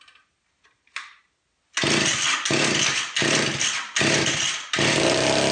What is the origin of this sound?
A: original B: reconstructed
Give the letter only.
A